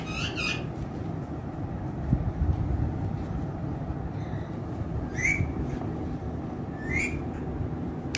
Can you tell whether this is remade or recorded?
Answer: recorded